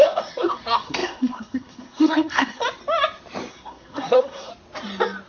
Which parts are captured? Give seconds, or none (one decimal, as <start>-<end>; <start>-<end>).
2.6-3.5; 4.5-5.3